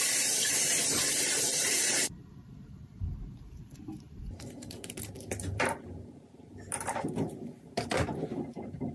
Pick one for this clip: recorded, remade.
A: remade